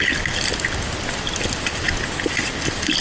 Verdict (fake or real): real